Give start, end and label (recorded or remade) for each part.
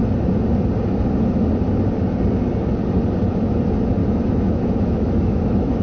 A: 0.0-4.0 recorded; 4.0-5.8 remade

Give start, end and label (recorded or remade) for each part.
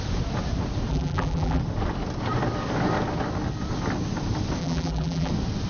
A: 0.0-0.9 recorded; 0.9-1.6 remade; 1.6-4.6 recorded; 4.6-5.3 remade; 5.3-5.7 recorded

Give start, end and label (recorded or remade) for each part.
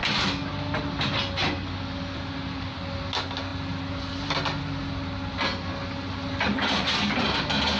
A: 0.0-7.8 recorded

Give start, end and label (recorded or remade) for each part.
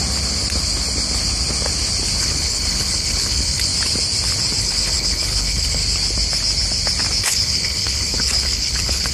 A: 0.0-2.2 recorded; 2.2-3.7 remade; 3.7-4.6 recorded; 4.6-5.8 remade; 5.8-7.2 recorded; 7.2-9.1 remade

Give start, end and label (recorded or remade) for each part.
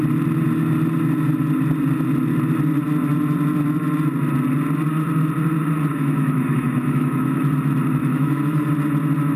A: 0.0-5.9 recorded; 5.9-7.4 remade; 7.4-8.0 recorded; 8.0-8.7 remade; 8.7-9.4 recorded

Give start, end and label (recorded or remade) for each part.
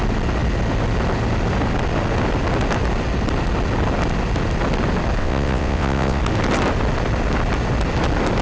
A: 0.0-5.2 recorded; 5.2-6.2 remade; 6.2-8.4 recorded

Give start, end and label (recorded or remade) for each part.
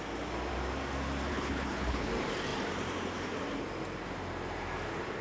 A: 0.0-1.3 recorded; 1.3-2.1 remade; 2.1-5.2 recorded